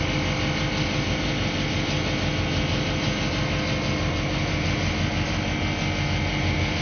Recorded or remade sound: recorded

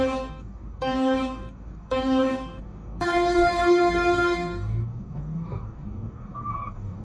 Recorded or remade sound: remade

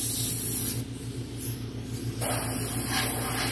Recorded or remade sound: recorded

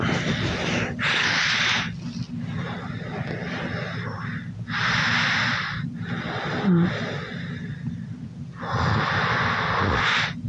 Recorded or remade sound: recorded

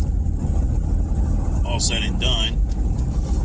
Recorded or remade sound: recorded